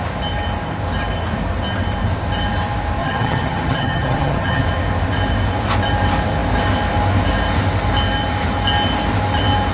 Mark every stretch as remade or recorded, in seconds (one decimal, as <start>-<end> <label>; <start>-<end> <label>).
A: 0.0-3.0 recorded; 3.0-4.6 remade; 4.6-9.7 recorded